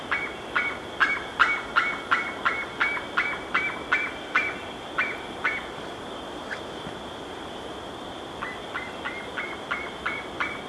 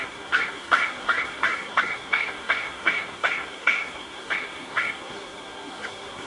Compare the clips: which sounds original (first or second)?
first